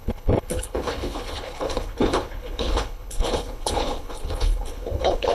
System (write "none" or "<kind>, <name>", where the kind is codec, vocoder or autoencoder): codec, HILCodec